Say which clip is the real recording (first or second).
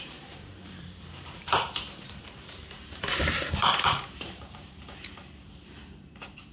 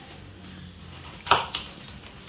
second